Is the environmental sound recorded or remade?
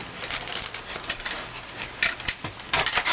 recorded